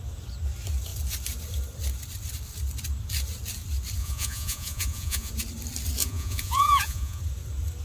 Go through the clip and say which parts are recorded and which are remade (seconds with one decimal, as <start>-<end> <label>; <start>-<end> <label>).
0.0-4.0 recorded; 4.0-5.3 remade; 5.3-6.0 recorded; 6.0-7.2 remade; 7.2-7.8 recorded